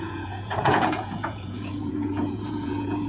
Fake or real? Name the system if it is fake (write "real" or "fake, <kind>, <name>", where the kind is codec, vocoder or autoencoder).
fake, vocoder, Vocos